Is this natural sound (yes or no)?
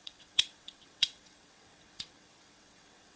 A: no